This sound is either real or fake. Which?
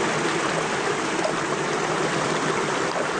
fake